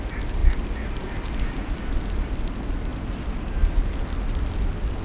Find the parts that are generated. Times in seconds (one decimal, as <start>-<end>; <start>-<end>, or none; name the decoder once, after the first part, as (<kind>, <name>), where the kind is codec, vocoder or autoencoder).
none